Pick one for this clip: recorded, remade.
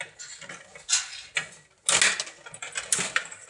recorded